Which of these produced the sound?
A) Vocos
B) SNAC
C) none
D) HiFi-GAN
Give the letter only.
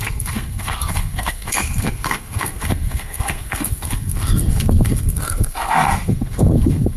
B